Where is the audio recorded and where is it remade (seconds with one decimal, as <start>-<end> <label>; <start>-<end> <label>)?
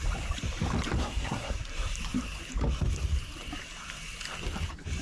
0.0-1.0 recorded; 1.0-1.5 remade; 1.5-5.0 recorded